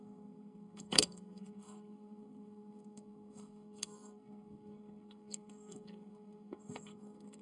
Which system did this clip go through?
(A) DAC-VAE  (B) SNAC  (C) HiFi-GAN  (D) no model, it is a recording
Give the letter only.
B